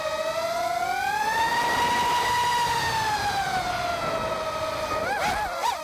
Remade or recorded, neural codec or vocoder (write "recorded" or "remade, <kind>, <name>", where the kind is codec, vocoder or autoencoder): recorded